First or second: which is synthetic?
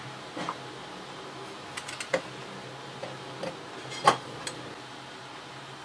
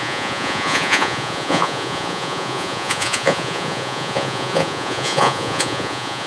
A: second